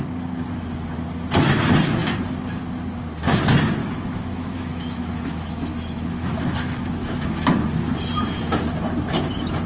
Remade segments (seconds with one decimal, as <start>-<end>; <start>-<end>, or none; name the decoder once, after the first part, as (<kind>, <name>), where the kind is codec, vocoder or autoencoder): 3.8-7.9 (autoencoder, DAC-VAE)